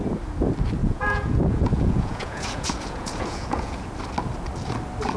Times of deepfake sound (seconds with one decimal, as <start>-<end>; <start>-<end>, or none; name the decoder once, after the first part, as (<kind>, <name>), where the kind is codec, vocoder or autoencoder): 0.8-3.9 (vocoder, Vocos)